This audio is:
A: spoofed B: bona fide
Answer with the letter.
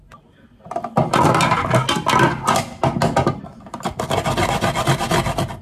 B